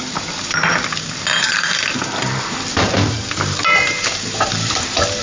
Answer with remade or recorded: remade